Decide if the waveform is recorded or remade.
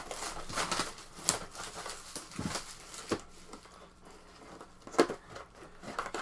recorded